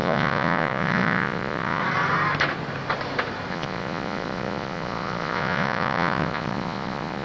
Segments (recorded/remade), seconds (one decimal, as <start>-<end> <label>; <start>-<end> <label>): 0.0-1.8 remade; 1.8-3.5 recorded; 3.5-7.2 remade